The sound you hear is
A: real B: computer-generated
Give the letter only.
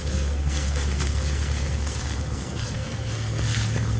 B